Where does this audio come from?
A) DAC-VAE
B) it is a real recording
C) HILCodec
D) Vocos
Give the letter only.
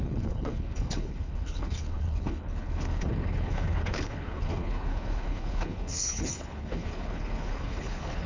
C